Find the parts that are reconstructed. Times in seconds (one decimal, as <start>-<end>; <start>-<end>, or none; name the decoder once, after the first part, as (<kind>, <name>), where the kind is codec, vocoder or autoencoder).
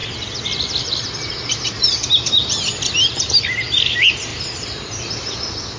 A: 0.0-3.4 (vocoder, BigVGAN v2); 4.3-5.8